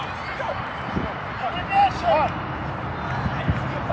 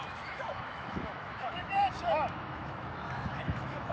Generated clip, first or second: second